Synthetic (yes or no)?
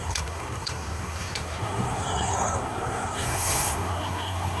yes